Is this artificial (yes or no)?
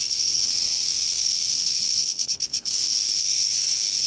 yes